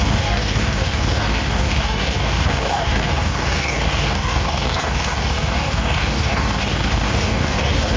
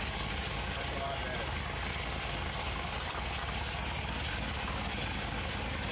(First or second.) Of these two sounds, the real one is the second